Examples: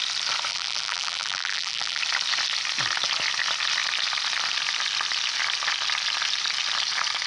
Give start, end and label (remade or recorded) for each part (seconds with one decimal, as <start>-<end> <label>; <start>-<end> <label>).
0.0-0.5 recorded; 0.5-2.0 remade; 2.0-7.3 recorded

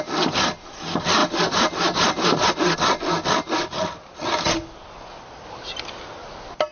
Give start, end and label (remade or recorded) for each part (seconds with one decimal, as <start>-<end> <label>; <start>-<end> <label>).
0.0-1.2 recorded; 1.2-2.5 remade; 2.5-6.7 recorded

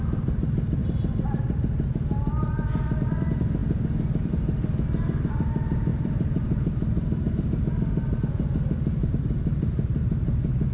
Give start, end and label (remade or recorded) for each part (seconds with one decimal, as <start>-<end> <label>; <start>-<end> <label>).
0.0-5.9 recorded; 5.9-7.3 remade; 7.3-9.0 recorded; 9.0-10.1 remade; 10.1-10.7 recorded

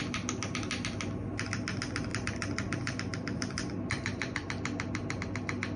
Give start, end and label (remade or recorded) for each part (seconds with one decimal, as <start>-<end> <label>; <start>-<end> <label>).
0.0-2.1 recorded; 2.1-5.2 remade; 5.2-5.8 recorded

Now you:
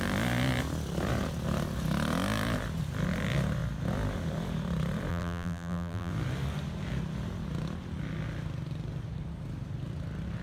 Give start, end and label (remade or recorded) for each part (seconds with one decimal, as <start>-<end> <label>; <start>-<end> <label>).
0.0-5.1 recorded; 5.1-6.1 remade; 6.1-10.4 recorded

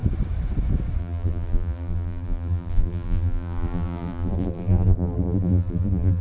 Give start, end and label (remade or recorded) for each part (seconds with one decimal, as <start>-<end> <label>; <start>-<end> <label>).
0.0-1.0 recorded; 1.0-6.2 remade

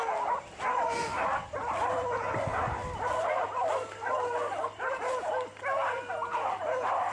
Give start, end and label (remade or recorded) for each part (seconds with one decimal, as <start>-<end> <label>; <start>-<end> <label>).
0.0-2.5 remade; 2.5-3.2 recorded; 3.2-5.8 remade; 5.8-7.1 recorded